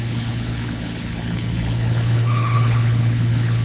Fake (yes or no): yes